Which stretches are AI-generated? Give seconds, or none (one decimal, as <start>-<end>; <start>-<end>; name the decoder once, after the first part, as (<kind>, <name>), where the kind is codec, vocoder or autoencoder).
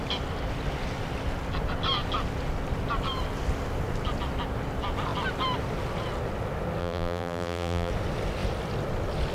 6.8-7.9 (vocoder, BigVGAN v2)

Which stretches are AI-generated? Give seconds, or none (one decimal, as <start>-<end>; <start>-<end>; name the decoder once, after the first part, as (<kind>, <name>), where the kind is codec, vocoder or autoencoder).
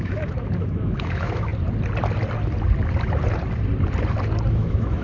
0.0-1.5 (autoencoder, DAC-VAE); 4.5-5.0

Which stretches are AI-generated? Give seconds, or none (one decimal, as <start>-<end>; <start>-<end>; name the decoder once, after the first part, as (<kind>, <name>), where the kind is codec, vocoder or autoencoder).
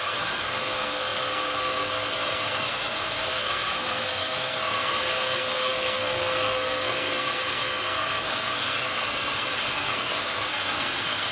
0.0-11.3 (codec, SNAC)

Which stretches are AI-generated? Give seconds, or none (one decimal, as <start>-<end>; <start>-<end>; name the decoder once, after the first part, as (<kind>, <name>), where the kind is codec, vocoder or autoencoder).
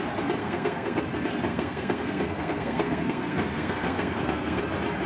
0.4-1.0 (codec, SNAC); 1.5-4.6